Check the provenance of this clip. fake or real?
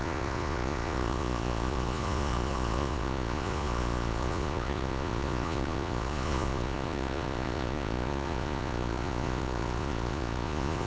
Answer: fake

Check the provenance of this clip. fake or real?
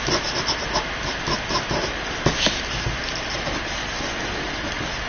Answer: real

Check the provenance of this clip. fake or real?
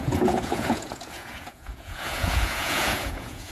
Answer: fake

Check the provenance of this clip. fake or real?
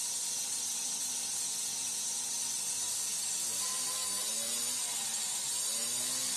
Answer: real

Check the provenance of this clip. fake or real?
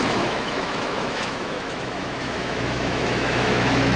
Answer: fake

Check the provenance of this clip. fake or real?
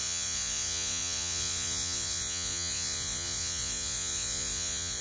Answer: fake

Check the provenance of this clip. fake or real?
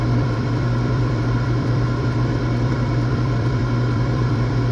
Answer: fake